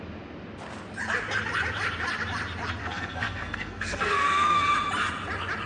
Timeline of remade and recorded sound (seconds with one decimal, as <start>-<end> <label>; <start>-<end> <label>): 0.0-2.8 recorded; 2.8-4.6 remade; 4.6-5.7 recorded